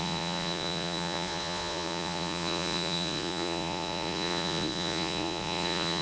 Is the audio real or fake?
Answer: fake